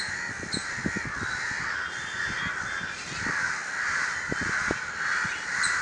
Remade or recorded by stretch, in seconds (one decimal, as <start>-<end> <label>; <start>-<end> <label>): 0.0-5.8 recorded